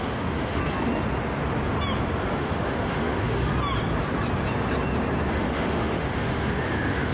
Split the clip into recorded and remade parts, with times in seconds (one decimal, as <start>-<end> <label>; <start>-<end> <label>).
0.0-0.6 remade; 0.6-2.3 recorded; 2.3-3.5 remade; 3.5-5.3 recorded; 5.3-7.1 remade